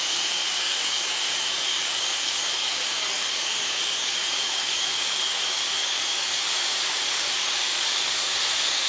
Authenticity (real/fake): fake